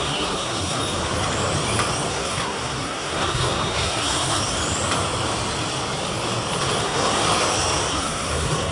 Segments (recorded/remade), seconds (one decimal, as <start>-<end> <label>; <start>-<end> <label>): 0.0-0.8 remade; 0.8-2.1 recorded; 2.1-4.4 remade; 4.4-6.8 recorded; 6.8-7.2 remade; 7.2-7.9 recorded; 7.9-8.7 remade